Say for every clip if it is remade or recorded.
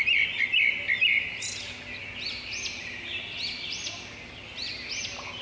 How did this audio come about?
recorded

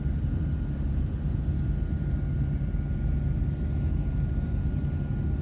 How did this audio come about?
recorded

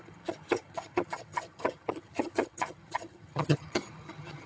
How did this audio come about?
remade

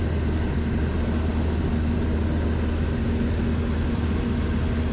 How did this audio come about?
recorded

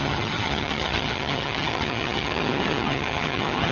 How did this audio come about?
remade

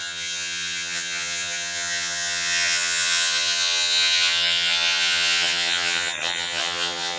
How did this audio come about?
remade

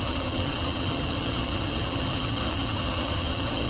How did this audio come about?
remade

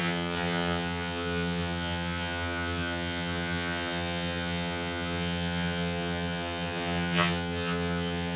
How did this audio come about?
remade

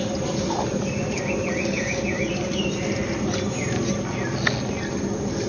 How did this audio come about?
recorded